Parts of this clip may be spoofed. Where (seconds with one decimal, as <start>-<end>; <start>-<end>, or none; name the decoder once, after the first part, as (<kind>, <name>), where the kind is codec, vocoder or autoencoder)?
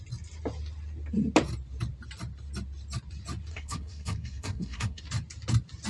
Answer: 3.5-5.0 (codec, SNAC)